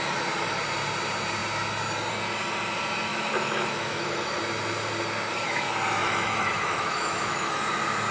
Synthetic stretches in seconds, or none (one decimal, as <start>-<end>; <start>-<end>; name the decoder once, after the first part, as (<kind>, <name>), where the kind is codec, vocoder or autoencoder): 3.1-4.4 (autoencoder, DAC-VAE); 6.0-7.6